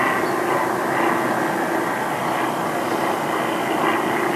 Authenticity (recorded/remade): recorded